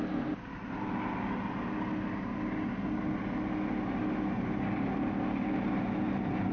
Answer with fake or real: real